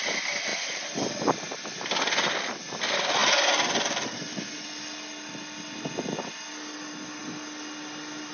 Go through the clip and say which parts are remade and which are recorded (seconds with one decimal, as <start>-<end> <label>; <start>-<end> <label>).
0.0-8.3 recorded